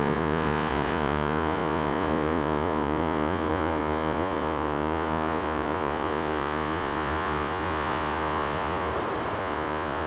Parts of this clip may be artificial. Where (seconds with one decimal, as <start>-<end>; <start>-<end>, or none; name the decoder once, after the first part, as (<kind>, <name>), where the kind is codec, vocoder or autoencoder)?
0.0-8.9 (vocoder, Vocos); 9.4-10.1